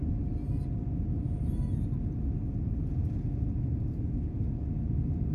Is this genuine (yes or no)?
yes